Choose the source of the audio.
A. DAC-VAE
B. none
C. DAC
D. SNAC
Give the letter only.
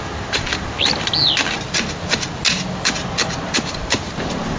B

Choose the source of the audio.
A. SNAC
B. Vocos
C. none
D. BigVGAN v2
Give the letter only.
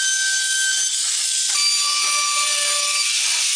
C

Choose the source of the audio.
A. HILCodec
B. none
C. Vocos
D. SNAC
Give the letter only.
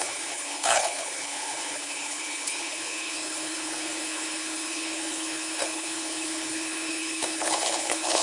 A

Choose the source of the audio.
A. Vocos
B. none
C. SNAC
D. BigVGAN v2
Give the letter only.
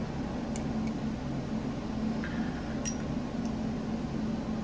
B